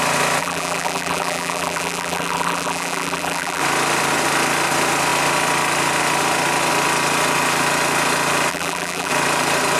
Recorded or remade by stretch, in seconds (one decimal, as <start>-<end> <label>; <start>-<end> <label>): 0.0-0.4 recorded; 0.4-3.6 remade; 3.6-8.5 recorded; 8.5-9.1 remade; 9.1-9.8 recorded